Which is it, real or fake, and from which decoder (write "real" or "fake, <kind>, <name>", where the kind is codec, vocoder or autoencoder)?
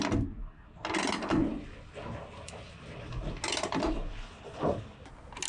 real